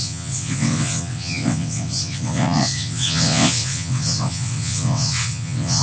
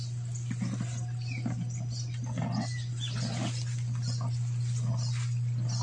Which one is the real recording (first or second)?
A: second